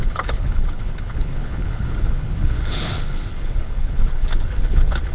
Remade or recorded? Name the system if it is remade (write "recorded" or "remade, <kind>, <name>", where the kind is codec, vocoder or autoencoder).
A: remade, codec, HILCodec